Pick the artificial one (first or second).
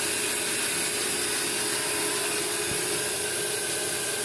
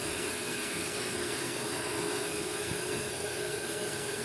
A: second